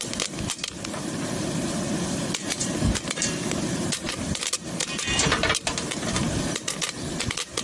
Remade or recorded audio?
remade